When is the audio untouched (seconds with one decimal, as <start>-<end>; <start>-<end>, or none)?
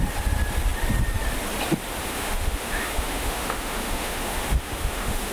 0.0-2.0